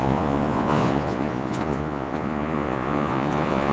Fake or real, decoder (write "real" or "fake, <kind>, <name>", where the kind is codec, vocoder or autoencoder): fake, vocoder, Vocos